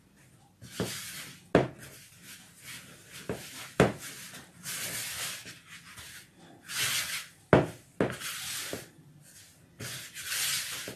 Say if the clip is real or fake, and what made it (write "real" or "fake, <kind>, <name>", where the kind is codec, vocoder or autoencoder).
real